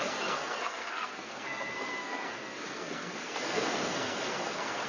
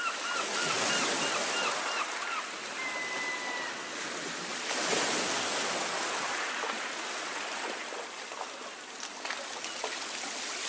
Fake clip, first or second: first